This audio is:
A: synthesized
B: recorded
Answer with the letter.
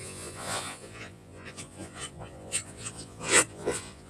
A